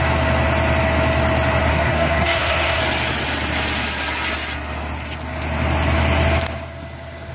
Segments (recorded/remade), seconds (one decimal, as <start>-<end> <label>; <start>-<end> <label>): 0.0-1.7 recorded; 1.7-2.8 remade; 2.8-7.3 recorded